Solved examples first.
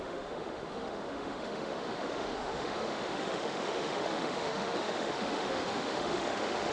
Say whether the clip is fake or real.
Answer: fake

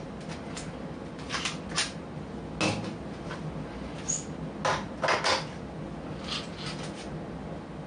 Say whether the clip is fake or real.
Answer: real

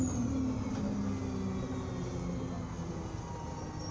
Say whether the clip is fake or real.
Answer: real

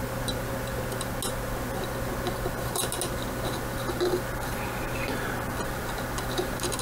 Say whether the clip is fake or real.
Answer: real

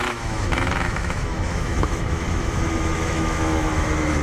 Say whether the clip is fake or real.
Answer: fake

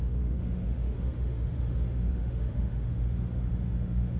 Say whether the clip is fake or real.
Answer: fake